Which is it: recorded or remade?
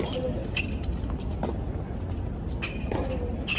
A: recorded